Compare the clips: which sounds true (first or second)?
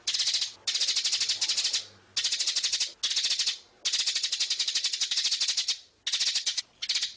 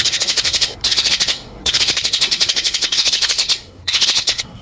first